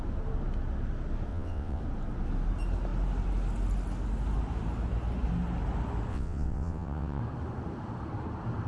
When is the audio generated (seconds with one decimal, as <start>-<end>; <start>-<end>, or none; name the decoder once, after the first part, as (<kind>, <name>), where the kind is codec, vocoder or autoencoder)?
1.3-1.8 (vocoder, WaveNeXt); 6.1-7.2